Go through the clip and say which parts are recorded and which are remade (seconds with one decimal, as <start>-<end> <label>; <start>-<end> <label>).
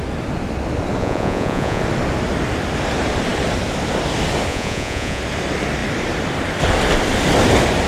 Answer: 0.0-1.0 recorded; 1.0-1.8 remade; 1.8-4.5 recorded; 4.5-5.2 remade; 5.2-7.9 recorded